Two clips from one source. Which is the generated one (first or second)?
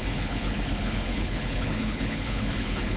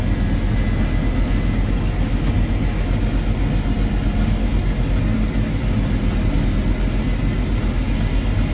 first